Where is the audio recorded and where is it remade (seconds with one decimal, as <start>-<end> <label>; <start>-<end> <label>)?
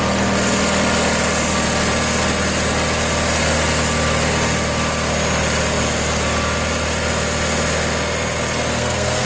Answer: 0.0-8.7 recorded; 8.7-9.3 remade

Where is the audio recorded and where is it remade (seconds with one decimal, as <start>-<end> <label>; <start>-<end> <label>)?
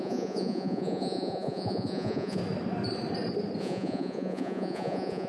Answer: 0.0-2.4 remade; 2.4-3.6 recorded; 3.6-5.3 remade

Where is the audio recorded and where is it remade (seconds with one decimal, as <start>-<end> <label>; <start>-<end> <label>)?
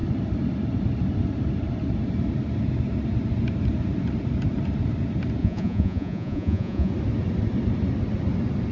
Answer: 0.0-5.4 recorded; 5.4-6.9 remade; 6.9-8.7 recorded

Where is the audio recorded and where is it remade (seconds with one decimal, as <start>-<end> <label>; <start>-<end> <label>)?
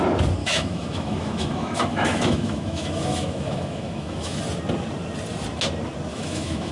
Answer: 0.0-0.4 recorded; 0.4-4.4 remade; 4.4-6.1 recorded; 6.1-6.7 remade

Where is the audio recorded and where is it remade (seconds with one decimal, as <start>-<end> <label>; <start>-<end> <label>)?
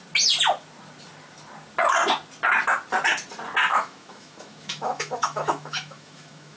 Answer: 0.0-3.7 recorded; 3.7-6.6 remade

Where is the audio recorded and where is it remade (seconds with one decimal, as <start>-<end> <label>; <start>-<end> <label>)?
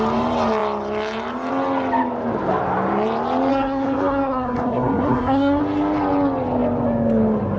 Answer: 0.0-3.5 recorded; 3.5-5.6 remade; 5.6-7.6 recorded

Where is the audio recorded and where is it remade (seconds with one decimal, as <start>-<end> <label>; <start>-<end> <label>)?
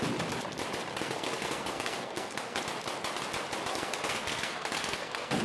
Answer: 0.0-0.9 recorded; 0.9-2.6 remade; 2.6-3.7 recorded; 3.7-5.4 remade